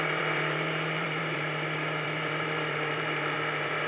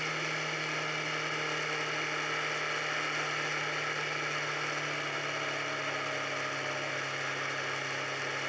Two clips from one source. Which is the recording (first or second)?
second